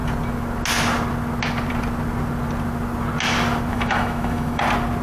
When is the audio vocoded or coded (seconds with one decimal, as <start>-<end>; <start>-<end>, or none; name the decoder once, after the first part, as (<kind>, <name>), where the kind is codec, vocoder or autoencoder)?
3.7-4.6 (autoencoder, DAC-VAE)